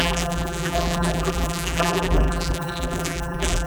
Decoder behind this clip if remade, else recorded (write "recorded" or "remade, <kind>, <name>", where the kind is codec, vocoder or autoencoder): remade, vocoder, BigVGAN v2